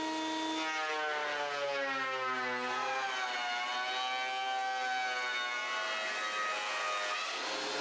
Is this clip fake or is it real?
real